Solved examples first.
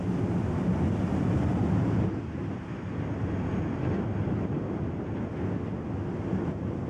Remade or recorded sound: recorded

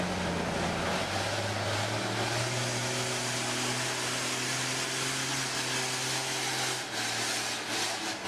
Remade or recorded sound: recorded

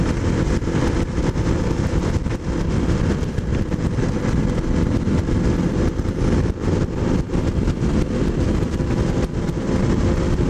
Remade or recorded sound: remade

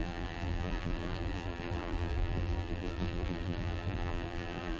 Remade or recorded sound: remade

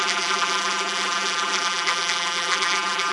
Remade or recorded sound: remade